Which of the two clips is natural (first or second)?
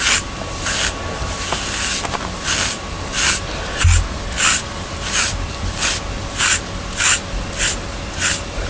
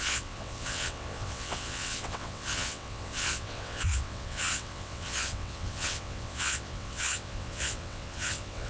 first